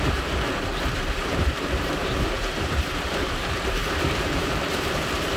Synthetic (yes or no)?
yes